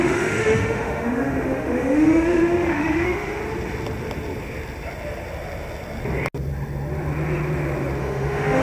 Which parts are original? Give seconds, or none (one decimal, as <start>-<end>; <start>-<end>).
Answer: 3.4-8.0